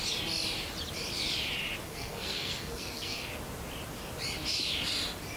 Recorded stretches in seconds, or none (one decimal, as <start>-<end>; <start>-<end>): 0.0-1.8; 3.3-5.4